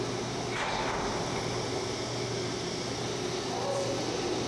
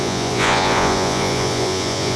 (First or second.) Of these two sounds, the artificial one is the second